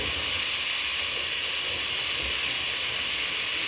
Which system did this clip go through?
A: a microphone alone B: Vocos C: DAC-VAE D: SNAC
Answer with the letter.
A